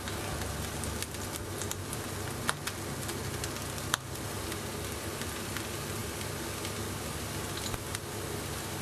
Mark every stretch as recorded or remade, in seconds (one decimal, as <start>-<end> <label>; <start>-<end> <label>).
0.0-8.8 recorded